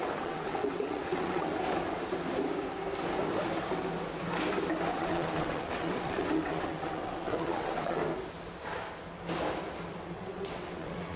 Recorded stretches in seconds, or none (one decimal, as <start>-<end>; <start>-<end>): 1.5-4.9; 8.0-10.1